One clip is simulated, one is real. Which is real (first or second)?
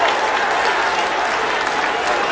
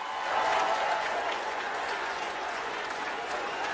first